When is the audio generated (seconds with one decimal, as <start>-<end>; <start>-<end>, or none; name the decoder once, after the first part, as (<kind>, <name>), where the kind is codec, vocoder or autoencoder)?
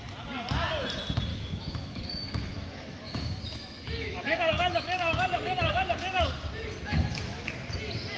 1.3-6.2 (autoencoder, DAC-VAE); 6.9-7.5